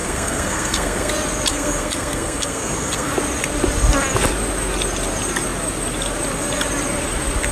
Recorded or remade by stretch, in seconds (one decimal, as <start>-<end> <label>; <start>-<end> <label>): 0.0-1.1 remade; 1.1-1.5 recorded; 1.5-3.1 remade; 3.1-7.5 recorded